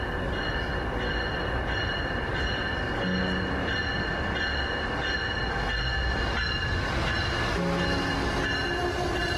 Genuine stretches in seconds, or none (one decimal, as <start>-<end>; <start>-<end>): 0.0-9.4